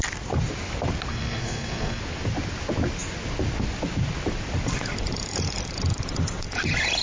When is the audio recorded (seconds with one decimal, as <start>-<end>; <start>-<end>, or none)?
0.0-1.1; 2.0-7.0